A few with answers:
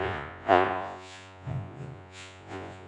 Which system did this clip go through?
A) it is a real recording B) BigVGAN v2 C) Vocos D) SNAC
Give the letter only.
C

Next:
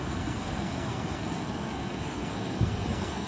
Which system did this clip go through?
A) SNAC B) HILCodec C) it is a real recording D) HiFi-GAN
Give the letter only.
A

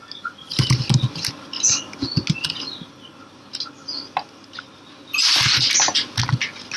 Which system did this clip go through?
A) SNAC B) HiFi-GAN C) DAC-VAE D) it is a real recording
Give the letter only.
D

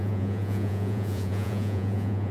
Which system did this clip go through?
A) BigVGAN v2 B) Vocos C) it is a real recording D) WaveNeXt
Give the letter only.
B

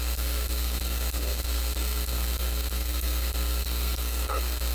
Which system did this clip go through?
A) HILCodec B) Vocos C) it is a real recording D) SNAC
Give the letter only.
D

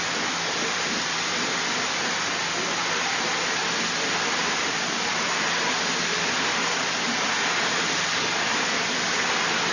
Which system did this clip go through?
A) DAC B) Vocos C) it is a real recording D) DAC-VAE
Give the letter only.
C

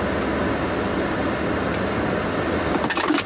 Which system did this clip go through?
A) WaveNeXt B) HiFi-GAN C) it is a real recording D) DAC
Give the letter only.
C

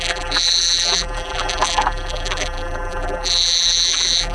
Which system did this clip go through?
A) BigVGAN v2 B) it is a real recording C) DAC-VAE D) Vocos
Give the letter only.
A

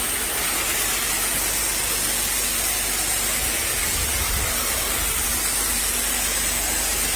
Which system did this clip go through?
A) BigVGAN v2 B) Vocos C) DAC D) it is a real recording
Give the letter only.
D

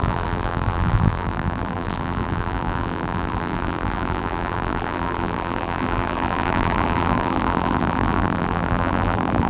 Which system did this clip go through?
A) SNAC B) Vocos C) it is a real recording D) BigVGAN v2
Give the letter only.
D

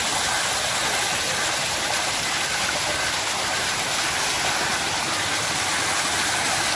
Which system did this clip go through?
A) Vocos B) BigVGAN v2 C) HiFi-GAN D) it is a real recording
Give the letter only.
D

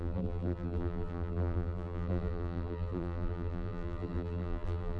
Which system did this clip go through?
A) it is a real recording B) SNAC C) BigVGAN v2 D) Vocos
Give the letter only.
C